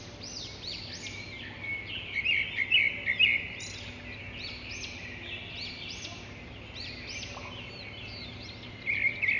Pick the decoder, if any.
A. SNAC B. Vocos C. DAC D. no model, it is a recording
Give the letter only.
D